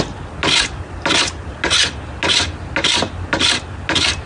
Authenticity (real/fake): real